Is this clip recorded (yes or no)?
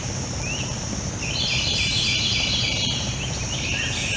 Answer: no